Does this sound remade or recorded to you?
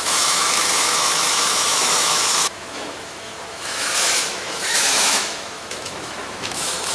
remade